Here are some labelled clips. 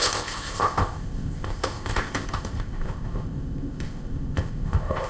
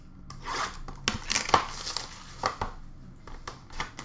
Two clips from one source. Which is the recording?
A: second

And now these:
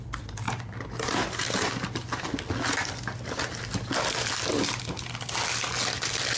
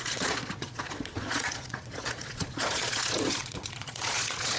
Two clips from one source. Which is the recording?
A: first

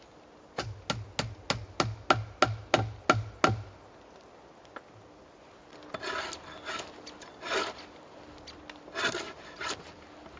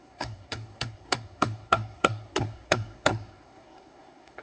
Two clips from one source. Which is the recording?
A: first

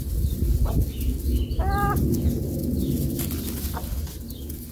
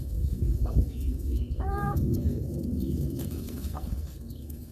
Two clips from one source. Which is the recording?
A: first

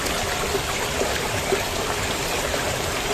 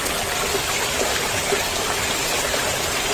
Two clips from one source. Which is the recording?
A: second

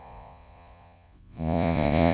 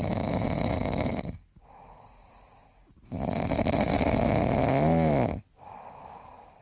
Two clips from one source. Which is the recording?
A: second